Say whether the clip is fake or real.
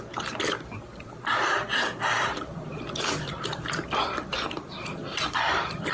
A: fake